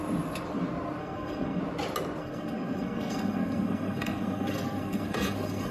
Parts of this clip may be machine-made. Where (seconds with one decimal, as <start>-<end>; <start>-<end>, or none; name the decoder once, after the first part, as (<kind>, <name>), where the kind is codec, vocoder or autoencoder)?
1.0-1.6 (codec, SNAC); 2.2-5.7